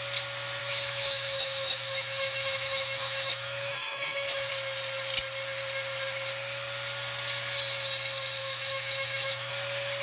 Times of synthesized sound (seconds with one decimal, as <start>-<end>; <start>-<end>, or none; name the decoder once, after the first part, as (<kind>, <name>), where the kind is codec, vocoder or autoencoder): 0.6-4.5 (autoencoder, DAC-VAE); 8.4-9.5